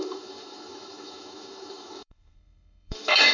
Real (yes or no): no